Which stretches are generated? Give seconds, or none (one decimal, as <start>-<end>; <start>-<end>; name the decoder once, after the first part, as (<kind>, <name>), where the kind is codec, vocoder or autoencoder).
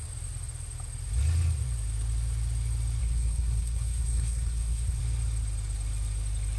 3.0-5.0 (codec, SNAC)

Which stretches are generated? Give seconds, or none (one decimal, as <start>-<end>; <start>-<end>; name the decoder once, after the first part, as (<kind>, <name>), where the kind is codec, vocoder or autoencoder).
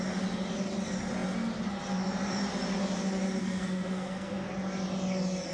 3.4-4.5 (codec, SNAC)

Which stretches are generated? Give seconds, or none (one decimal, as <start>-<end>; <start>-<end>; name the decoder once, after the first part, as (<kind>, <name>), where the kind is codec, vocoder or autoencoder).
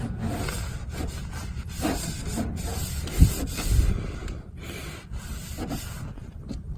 none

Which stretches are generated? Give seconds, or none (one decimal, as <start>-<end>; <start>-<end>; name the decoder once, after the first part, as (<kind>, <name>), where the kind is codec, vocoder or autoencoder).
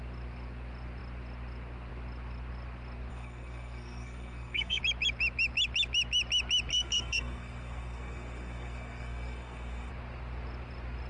3.1-4.8 (codec, SNAC); 6.7-9.9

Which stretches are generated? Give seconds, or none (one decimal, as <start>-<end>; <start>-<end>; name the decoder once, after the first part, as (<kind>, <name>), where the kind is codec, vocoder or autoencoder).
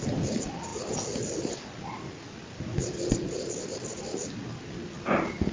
none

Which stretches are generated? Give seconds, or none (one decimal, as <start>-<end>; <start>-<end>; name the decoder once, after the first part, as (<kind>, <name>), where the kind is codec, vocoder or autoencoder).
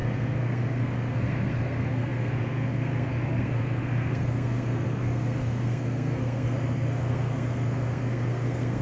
0.0-8.8 (codec, SNAC)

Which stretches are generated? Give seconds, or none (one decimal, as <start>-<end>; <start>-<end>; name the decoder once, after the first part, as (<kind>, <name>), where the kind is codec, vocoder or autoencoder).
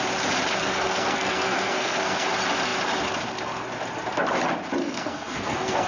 0.6-2.3 (codec, SNAC); 4.8-5.9